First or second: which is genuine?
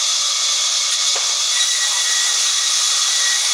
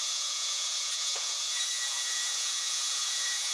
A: first